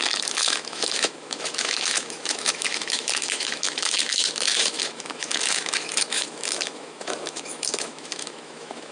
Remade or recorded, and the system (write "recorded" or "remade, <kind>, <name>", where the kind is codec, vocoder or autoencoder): remade, autoencoder, DAC-VAE